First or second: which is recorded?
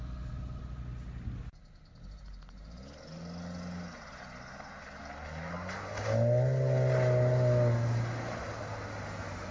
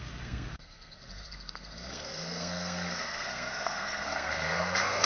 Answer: first